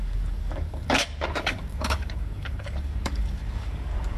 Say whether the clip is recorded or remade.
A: remade